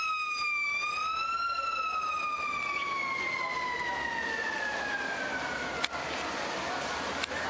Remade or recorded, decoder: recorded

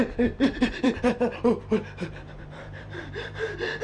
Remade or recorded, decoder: remade, vocoder, BigVGAN v2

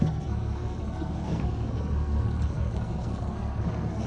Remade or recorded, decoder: remade, codec, SNAC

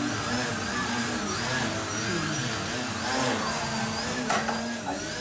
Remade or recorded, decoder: recorded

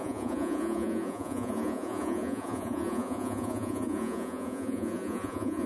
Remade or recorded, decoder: remade, vocoder, Vocos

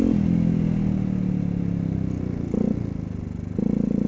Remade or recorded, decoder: recorded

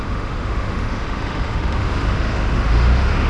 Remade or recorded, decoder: remade, autoencoder, DAC-VAE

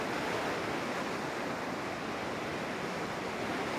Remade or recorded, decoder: recorded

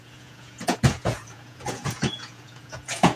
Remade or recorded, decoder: remade, vocoder, Vocos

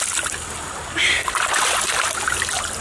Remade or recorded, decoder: recorded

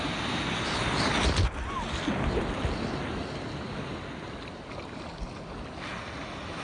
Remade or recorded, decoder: recorded